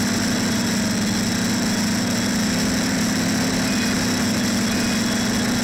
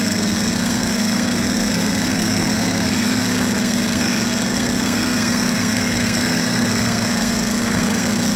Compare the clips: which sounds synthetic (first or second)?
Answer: second